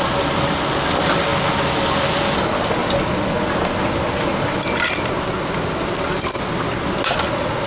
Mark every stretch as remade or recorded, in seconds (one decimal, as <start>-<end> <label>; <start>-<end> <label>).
0.0-7.7 recorded